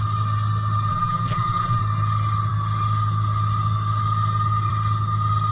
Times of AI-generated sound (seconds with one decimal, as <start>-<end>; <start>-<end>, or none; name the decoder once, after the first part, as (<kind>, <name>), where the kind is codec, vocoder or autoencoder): 0.9-1.8 (vocoder, BigVGAN v2)